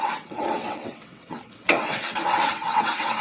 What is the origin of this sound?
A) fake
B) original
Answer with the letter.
A